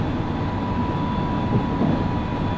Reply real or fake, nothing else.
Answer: real